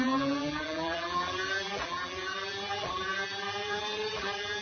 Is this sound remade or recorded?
remade